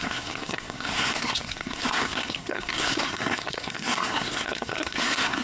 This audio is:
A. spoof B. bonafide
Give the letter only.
A